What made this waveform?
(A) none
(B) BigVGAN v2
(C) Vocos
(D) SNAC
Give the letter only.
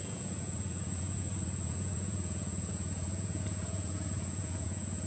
C